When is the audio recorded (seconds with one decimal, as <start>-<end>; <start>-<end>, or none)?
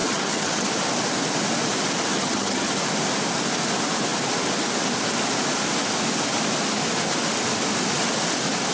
0.7-2.1; 2.7-8.7